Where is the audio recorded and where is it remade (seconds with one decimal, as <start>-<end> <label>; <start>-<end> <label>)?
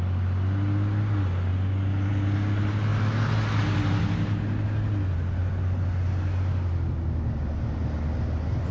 0.0-8.7 recorded